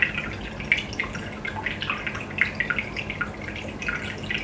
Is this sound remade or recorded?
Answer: recorded